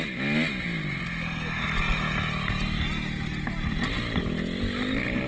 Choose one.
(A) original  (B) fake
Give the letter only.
A